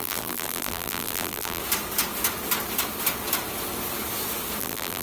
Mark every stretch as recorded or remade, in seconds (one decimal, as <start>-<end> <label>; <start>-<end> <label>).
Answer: 0.0-1.6 remade; 1.6-4.6 recorded; 4.6-5.0 remade